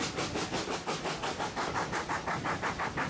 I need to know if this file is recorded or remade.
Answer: recorded